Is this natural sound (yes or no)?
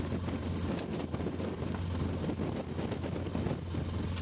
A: yes